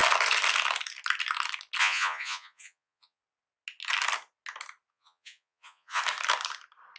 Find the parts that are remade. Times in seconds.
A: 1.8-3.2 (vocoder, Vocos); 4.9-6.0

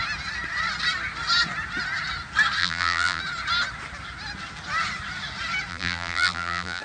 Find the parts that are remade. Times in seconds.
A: 2.6-3.2 (vocoder, BigVGAN v2); 5.7-6.8